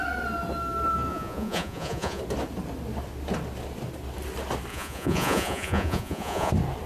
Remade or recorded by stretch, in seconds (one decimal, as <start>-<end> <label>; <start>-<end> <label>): 0.0-1.1 recorded; 1.1-2.2 remade; 2.2-4.7 recorded; 4.7-6.5 remade; 6.5-6.9 recorded